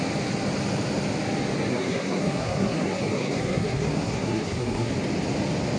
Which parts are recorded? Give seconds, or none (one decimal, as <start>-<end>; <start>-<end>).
0.0-1.7; 4.9-5.8